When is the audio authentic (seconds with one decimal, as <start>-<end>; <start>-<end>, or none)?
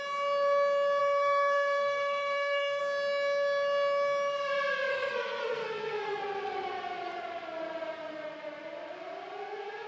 0.0-1.0; 2.8-4.9; 6.2-9.9